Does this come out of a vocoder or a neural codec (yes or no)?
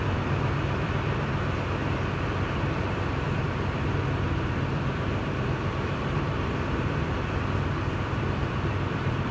yes